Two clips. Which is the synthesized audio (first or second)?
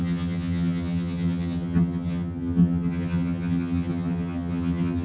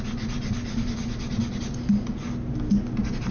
first